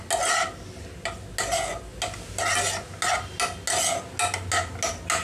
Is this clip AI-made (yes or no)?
no